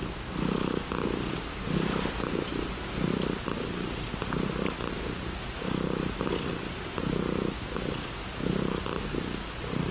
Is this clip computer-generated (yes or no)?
no